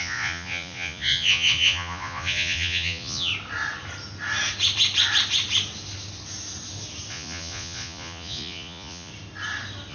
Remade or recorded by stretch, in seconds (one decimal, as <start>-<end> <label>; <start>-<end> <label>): 0.0-3.3 remade; 3.3-7.1 recorded; 7.1-9.1 remade; 9.1-9.9 recorded